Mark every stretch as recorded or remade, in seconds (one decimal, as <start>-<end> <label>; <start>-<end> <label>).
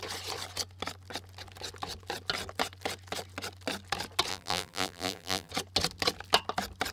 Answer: 0.0-4.3 recorded; 4.3-5.5 remade; 5.5-6.9 recorded